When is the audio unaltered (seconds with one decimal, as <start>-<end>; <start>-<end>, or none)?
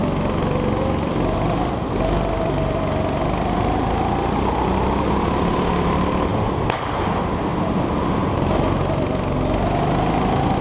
0.0-6.3; 7.1-10.6